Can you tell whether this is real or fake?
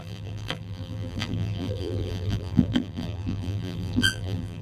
fake